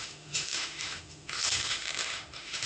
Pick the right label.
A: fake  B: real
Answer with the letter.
A